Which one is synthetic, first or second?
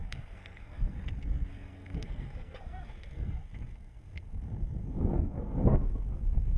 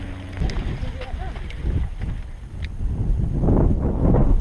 first